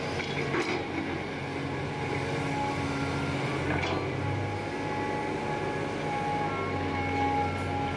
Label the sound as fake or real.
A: real